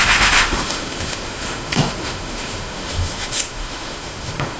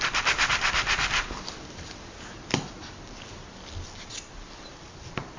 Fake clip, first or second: first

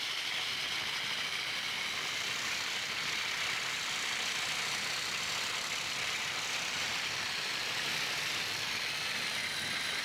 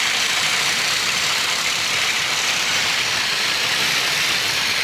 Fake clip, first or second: second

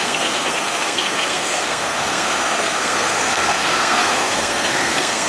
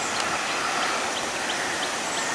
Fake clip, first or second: first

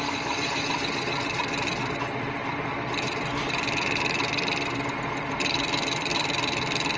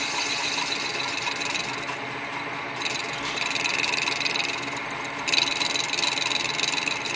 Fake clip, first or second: first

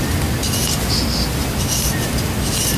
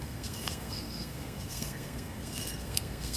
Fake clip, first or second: second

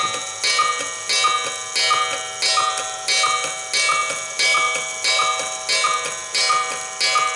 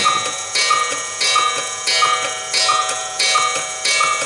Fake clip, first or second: second